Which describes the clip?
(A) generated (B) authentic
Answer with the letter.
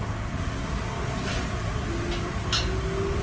B